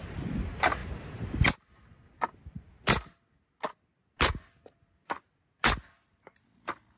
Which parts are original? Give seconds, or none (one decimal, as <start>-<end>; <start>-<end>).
0.0-7.0